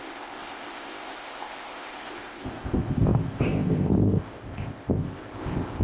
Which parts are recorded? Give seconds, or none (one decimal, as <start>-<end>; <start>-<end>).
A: none

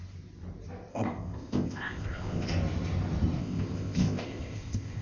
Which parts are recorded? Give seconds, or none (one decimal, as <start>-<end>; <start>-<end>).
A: 0.0-0.9; 2.5-3.4

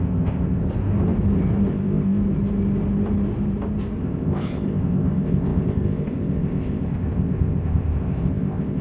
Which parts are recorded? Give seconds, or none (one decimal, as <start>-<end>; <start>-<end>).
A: 0.6-1.7; 2.2-4.0

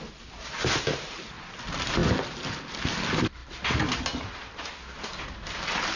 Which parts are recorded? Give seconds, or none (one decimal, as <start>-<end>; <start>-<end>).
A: 0.0-6.0